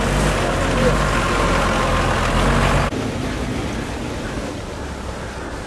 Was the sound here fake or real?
real